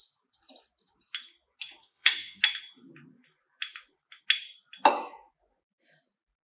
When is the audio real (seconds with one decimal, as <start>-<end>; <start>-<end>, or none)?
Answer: 0.0-1.8; 2.4-6.5